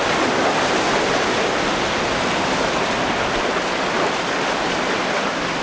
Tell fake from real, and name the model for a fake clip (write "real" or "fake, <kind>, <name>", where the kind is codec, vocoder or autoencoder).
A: real